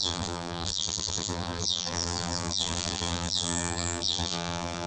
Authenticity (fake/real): fake